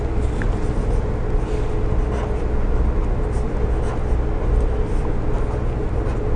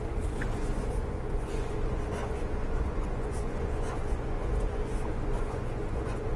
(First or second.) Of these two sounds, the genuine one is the first